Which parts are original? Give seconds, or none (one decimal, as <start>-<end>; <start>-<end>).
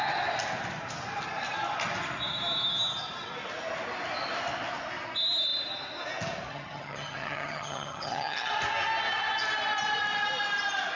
0.0-6.5; 8.5-11.0